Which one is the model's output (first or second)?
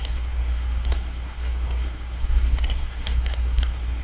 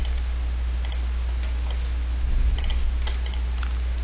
first